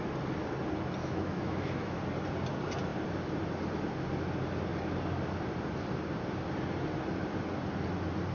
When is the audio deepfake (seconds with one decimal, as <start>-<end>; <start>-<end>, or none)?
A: 1.0-2.0